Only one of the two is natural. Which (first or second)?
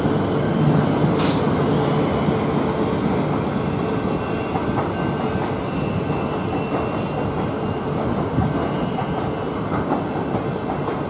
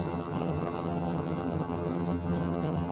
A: first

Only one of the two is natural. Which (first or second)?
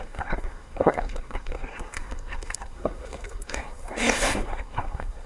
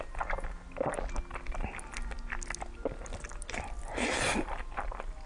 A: second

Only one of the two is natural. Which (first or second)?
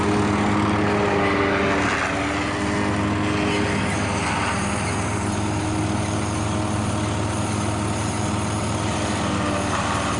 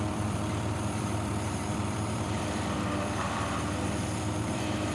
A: first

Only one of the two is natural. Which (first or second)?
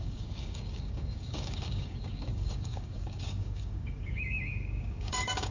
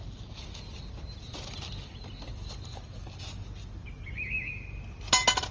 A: second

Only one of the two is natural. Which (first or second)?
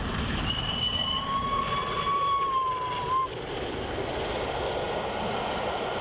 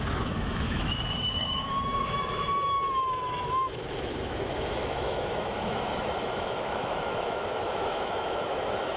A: first